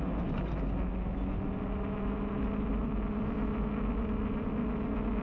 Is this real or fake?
real